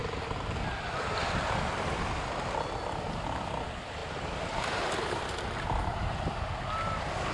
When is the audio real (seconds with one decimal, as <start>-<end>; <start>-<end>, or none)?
0.0-7.3